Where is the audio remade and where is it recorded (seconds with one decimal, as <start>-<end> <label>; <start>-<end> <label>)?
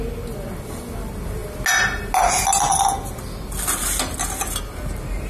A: 0.0-5.3 recorded